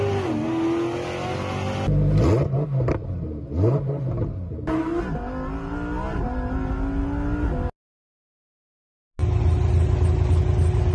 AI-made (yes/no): no